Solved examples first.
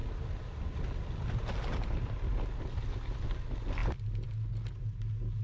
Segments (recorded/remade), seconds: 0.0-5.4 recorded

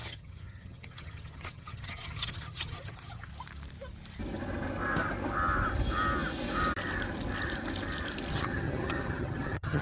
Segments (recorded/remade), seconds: 0.0-3.3 remade; 3.3-8.3 recorded; 8.3-9.8 remade